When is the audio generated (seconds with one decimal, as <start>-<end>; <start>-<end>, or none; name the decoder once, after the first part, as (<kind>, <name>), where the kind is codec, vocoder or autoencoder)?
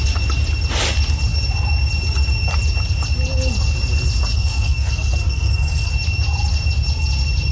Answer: 4.3-5.9 (codec, SNAC)